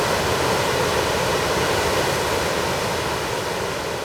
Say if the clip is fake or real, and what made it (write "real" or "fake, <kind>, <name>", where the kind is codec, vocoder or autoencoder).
real